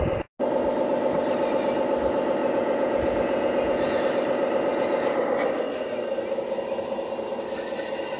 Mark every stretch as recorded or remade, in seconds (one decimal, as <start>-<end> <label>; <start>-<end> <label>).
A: 0.0-2.4 recorded; 2.4-4.0 remade; 4.0-4.7 recorded; 4.7-5.2 remade; 5.2-8.2 recorded